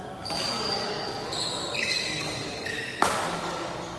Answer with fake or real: fake